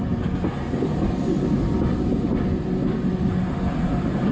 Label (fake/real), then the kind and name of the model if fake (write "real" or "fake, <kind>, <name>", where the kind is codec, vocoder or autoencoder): real